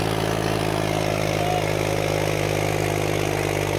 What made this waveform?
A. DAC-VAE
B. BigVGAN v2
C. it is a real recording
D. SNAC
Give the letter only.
C